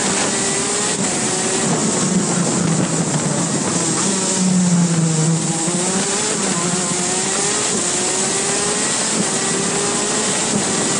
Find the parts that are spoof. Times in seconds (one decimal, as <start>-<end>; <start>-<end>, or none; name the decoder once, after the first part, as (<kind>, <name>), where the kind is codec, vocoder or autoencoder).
none

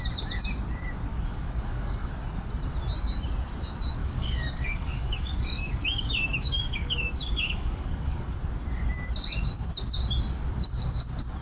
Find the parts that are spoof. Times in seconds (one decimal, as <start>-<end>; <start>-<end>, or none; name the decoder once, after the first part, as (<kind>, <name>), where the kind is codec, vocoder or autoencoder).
1.1-2.1 (codec, DAC); 4.0-8.4

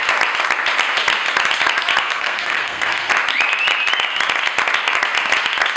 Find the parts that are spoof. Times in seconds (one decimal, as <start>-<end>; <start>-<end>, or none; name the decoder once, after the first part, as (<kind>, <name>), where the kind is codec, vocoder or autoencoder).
2.0-3.1 (codec, SNAC)

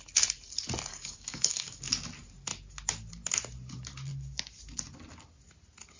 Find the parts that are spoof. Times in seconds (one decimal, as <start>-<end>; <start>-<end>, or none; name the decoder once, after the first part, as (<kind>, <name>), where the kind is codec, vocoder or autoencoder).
0.9-1.8 (codec, DAC)